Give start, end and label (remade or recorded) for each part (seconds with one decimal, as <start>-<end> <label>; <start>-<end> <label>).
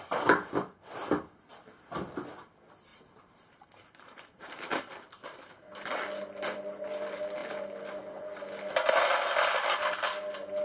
0.0-2.9 recorded; 2.9-5.9 remade; 5.9-10.6 recorded